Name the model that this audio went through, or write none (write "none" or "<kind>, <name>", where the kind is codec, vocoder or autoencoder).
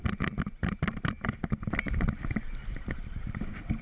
none